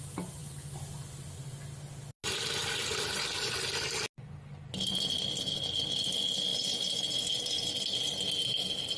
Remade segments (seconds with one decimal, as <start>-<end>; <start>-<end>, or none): none